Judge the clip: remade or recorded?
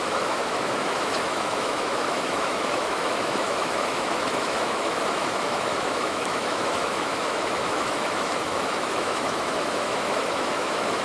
remade